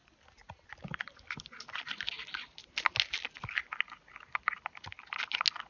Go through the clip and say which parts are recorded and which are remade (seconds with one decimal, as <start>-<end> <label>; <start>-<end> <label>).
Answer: 0.0-5.7 recorded